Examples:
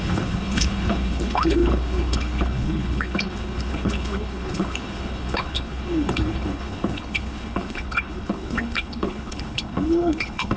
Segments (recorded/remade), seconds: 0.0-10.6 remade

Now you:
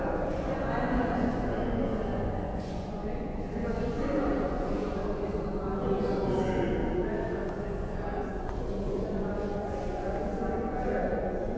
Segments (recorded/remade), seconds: 0.0-11.6 remade

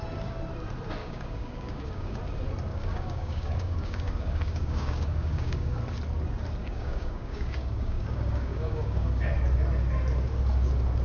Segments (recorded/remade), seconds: 0.0-1.0 recorded; 1.0-2.2 remade; 2.2-2.7 recorded; 2.7-5.8 remade; 5.8-6.6 recorded; 6.6-9.3 remade; 9.3-11.0 recorded

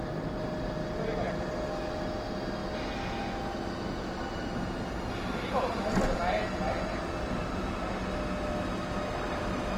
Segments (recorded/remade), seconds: 0.0-9.8 recorded

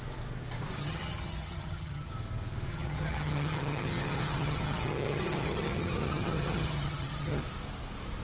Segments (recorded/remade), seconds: 0.0-0.8 recorded; 0.8-2.1 remade; 2.1-2.7 recorded; 2.7-7.4 remade; 7.4-8.2 recorded